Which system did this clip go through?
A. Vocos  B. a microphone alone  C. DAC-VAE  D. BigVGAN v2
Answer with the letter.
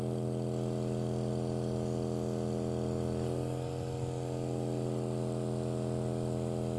B